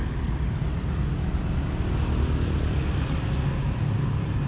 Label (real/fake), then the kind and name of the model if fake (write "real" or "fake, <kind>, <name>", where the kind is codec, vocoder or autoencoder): real